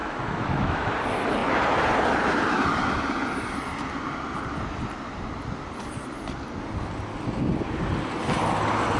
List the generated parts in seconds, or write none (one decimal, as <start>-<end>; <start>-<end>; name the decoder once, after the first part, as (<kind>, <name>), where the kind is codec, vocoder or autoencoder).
0.0-0.9 (autoencoder, DAC-VAE)